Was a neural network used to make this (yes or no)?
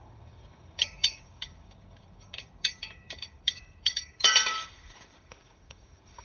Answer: yes